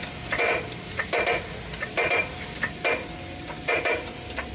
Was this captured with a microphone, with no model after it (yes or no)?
yes